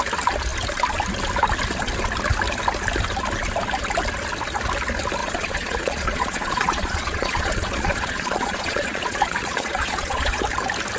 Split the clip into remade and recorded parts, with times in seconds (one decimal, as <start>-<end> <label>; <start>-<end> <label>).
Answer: 0.0-5.2 recorded; 5.2-10.4 remade; 10.4-11.0 recorded